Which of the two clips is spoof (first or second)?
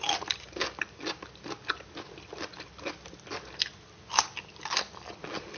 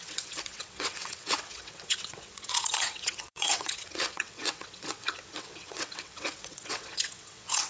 second